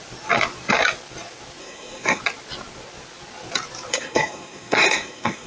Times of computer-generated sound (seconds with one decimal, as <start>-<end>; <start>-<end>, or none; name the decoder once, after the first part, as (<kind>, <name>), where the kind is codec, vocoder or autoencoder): 1.6-2.2 (codec, SNAC); 3.9-5.5